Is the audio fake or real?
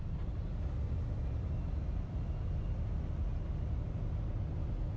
real